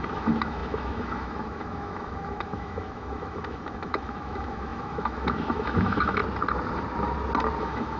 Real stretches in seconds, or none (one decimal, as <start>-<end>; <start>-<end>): 6.2-7.6